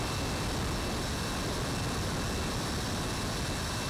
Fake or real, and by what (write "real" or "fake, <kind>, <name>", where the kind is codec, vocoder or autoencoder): real